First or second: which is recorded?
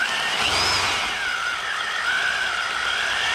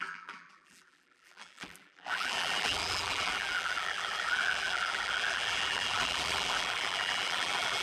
first